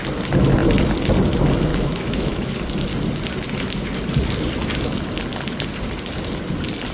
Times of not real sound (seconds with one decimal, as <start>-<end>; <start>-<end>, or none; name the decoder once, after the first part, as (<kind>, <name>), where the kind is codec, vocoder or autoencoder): 1.7-2.5 (autoencoder, DAC-VAE)